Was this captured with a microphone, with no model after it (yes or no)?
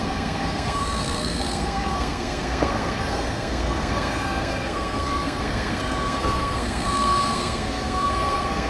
no